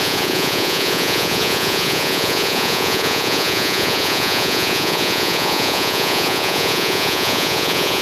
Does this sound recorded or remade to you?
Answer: remade